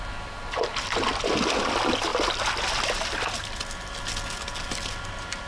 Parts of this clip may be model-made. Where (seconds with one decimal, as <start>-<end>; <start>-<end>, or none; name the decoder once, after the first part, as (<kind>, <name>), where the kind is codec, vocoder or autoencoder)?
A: none